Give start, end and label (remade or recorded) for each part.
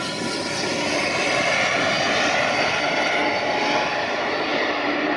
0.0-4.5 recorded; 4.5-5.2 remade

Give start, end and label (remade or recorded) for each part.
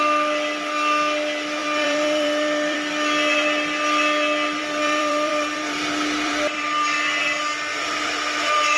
0.0-1.6 recorded; 1.6-2.9 remade; 2.9-4.6 recorded; 4.6-7.2 remade; 7.2-7.7 recorded; 7.7-8.8 remade